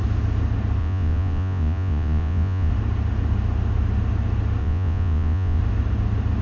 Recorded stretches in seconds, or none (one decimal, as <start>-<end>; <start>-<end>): 0.0-0.8; 2.7-4.6; 5.6-6.4